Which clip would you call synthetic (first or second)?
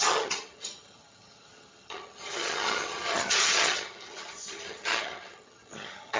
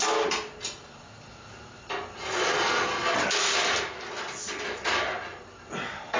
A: first